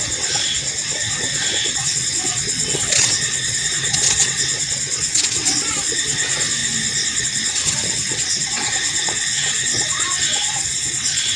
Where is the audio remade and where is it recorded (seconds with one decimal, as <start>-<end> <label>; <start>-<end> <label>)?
0.0-6.6 remade; 6.6-7.2 recorded; 7.2-11.4 remade